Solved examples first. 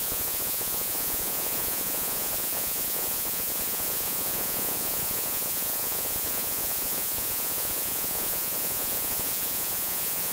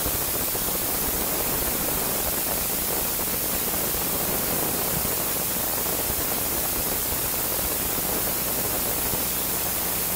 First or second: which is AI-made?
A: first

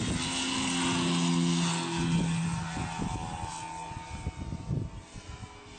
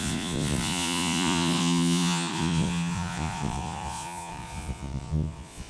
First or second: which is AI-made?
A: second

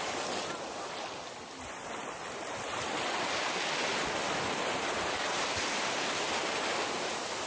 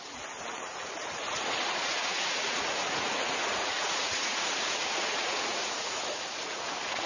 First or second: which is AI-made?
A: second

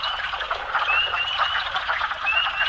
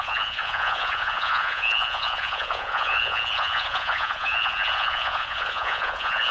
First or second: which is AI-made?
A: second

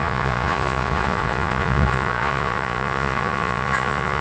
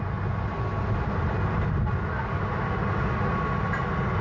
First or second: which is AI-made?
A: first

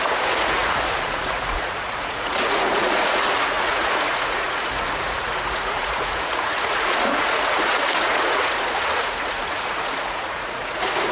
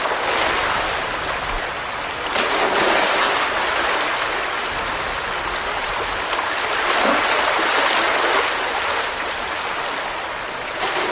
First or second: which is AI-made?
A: first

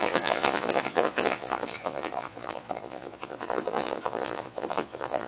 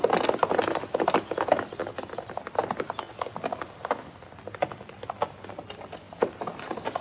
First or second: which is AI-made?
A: first